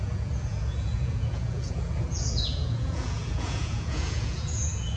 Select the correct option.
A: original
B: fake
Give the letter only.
B